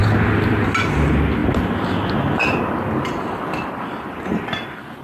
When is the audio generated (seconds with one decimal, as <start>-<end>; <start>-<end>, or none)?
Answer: none